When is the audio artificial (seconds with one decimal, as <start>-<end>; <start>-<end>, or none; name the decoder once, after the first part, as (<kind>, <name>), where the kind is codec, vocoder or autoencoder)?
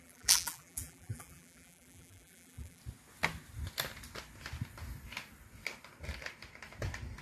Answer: 0.0-2.8 (vocoder, BigVGAN v2)